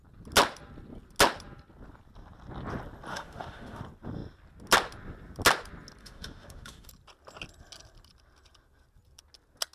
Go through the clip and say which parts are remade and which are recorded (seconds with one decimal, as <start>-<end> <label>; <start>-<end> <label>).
0.0-3.1 recorded; 3.1-3.8 remade; 3.8-6.0 recorded; 6.0-6.9 remade; 6.9-9.7 recorded